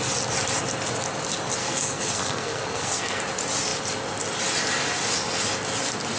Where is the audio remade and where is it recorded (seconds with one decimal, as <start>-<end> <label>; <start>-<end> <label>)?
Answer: 0.0-1.6 recorded; 1.6-3.2 remade; 3.2-6.2 recorded